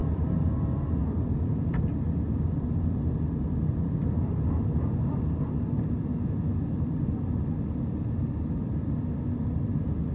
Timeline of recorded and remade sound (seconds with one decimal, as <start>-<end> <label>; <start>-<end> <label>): 0.0-1.2 remade; 1.2-10.1 recorded